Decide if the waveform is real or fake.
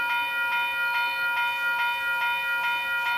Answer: real